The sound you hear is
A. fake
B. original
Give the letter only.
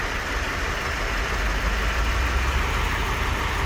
B